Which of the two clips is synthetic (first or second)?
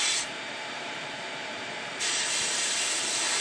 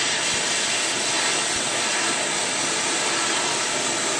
first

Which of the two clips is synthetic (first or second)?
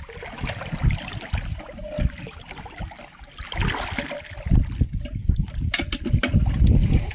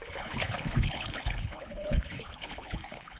second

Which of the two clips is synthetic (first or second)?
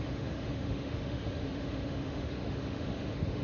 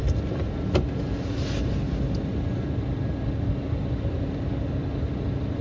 first